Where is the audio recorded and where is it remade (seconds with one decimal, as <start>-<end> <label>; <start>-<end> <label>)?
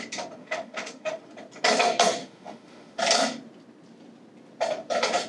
0.0-0.4 recorded; 0.4-1.2 remade; 1.2-2.2 recorded; 2.2-3.0 remade; 3.0-5.3 recorded